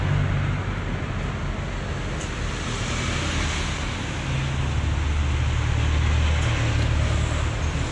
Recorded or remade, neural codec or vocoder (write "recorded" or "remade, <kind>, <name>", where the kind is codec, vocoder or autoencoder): recorded